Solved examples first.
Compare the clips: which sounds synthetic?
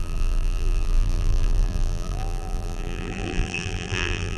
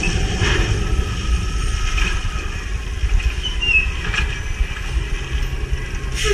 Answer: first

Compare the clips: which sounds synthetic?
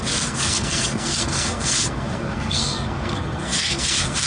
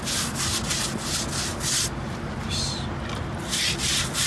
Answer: first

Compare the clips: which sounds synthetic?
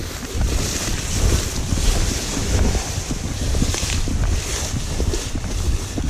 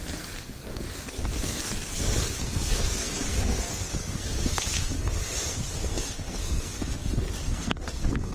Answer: second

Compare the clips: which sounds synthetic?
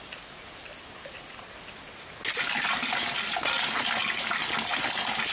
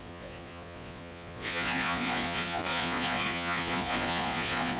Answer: second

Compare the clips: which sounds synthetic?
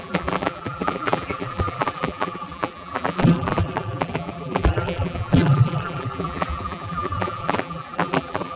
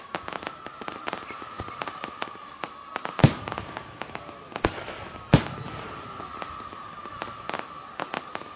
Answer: first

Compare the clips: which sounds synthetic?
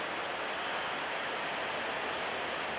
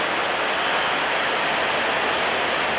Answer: first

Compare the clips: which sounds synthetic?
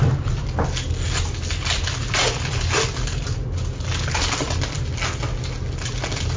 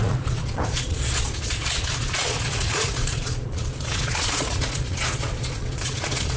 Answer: second